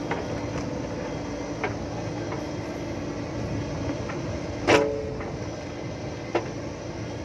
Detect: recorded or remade recorded